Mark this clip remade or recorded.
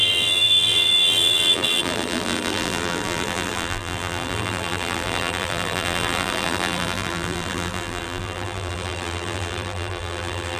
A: remade